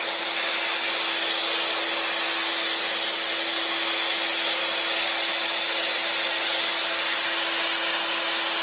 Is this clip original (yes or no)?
yes